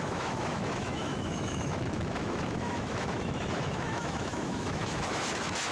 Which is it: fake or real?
fake